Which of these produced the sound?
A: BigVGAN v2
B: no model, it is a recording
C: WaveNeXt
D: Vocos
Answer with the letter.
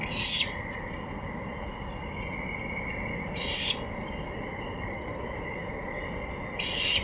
B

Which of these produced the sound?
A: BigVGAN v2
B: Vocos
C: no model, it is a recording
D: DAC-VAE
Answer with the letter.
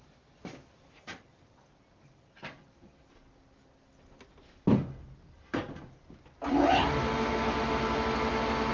C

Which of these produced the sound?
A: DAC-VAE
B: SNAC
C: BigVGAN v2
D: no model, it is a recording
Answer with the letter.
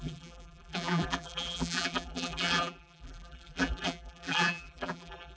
C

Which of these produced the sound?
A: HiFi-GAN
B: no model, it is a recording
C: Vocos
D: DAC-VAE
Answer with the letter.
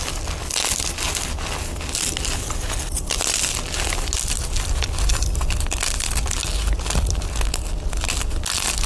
B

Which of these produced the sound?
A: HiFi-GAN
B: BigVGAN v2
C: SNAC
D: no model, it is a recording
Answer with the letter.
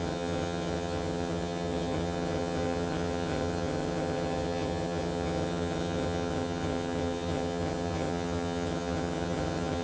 A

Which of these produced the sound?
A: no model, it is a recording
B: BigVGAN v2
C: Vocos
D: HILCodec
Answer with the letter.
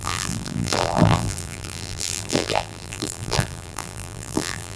B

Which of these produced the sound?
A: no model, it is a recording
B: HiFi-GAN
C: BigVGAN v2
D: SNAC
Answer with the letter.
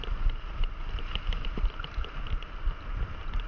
C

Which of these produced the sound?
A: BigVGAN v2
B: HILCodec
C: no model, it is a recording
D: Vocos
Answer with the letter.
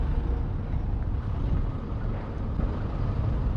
C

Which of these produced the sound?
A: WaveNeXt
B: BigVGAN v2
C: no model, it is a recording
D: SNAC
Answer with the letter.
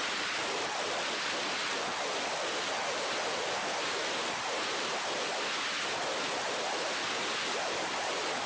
C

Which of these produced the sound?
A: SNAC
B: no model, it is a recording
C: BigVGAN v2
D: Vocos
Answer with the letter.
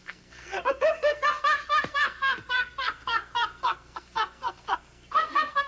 A